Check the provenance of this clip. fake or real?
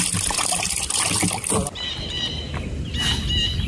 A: real